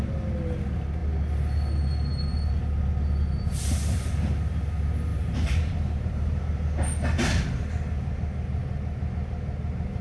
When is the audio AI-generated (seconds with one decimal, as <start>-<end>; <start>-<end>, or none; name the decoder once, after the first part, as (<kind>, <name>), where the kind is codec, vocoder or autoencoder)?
5.1-6.4 (vocoder, BigVGAN v2); 8.6-9.1